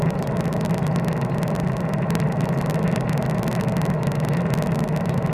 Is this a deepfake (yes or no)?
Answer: no